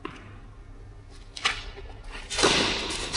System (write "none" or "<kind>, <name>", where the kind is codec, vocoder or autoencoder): none